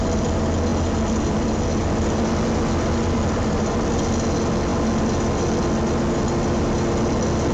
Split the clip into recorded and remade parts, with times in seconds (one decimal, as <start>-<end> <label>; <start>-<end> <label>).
0.0-7.5 recorded